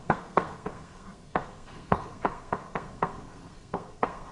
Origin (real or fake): fake